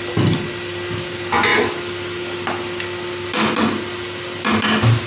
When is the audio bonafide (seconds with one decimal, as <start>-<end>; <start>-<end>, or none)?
0.0-5.1